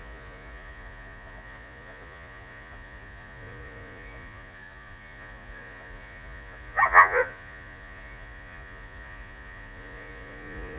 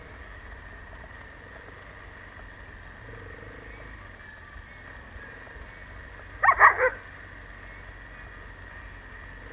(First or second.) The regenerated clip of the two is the first